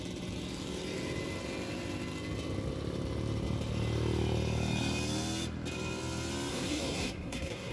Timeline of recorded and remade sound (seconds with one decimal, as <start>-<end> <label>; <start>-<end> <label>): 0.0-6.5 recorded; 6.5-7.7 remade